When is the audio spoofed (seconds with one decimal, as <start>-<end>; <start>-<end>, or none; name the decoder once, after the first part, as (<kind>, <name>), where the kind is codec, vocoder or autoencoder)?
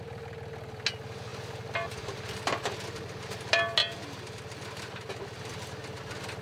none